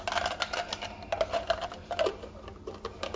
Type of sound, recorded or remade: recorded